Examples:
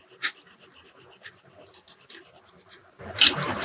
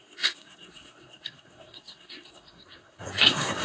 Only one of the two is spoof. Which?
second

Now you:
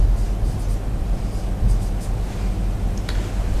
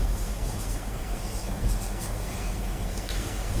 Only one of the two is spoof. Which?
second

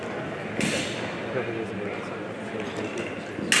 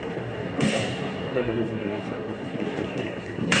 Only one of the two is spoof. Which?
second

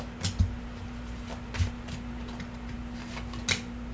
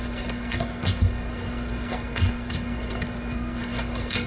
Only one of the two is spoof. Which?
second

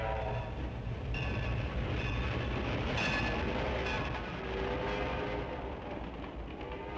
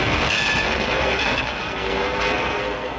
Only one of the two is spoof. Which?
second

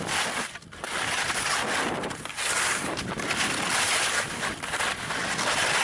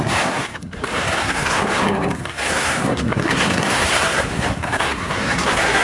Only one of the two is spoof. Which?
second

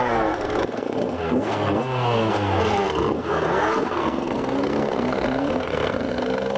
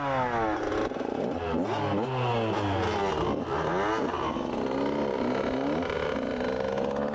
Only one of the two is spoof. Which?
first